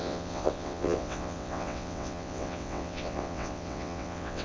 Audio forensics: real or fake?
fake